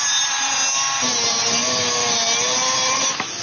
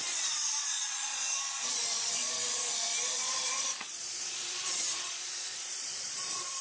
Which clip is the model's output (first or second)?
second